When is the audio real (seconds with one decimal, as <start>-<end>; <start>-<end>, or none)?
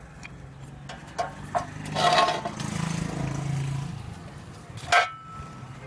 0.0-5.9